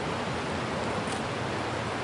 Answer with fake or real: real